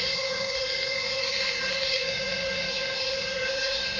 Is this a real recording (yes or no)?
no